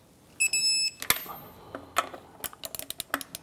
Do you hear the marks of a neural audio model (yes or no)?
no